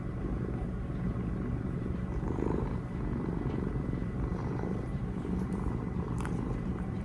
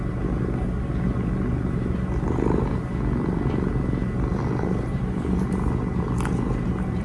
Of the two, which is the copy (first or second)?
first